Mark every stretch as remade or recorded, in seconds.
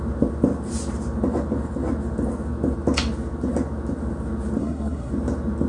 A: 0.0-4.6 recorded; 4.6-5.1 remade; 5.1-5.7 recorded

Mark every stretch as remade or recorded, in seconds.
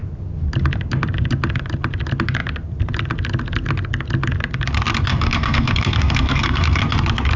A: 0.0-5.1 recorded; 5.1-6.8 remade; 6.8-7.4 recorded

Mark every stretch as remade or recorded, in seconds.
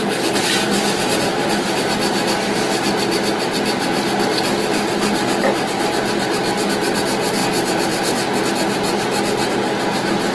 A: 0.0-10.3 recorded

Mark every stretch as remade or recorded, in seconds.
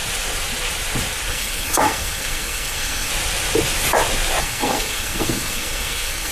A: 0.0-1.3 recorded; 1.3-3.1 remade; 3.1-4.4 recorded; 4.4-6.3 remade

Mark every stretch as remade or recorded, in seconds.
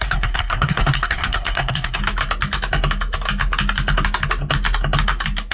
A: 0.0-2.0 remade; 2.0-5.5 recorded